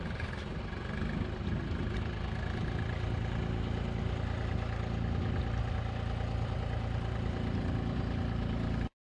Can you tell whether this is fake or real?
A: real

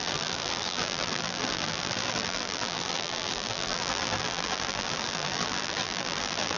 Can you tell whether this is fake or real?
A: fake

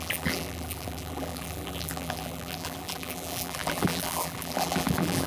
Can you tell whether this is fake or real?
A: fake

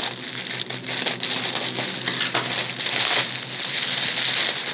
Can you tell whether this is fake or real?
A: real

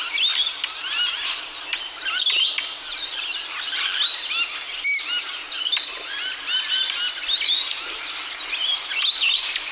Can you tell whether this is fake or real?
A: real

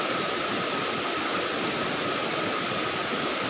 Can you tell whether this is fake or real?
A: fake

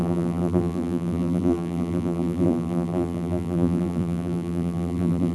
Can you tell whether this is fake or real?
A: fake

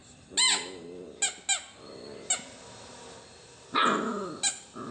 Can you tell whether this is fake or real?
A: real